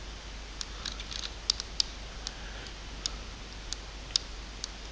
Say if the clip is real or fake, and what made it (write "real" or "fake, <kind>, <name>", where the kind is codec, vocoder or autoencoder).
real